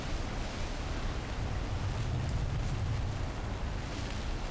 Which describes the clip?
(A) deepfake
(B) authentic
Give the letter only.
B